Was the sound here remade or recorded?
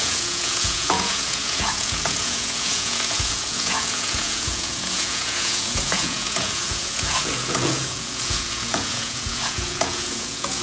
remade